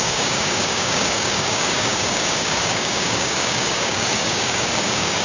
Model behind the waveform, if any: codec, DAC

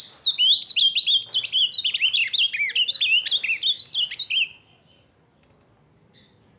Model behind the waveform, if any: none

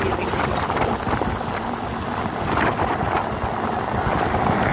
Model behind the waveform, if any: none